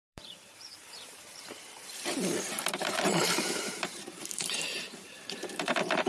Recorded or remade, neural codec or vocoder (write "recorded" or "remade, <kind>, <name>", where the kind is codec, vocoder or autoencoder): remade, vocoder, BigVGAN v2